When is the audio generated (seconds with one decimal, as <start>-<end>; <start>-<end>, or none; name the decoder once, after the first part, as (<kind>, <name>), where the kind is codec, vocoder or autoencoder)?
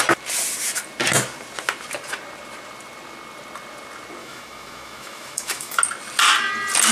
4.2-5.8 (autoencoder, DAC-VAE)